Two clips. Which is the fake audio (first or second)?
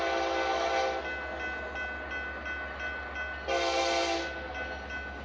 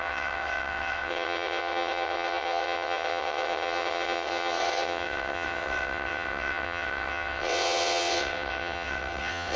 second